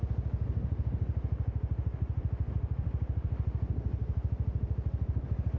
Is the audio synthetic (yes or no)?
no